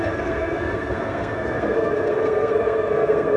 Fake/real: fake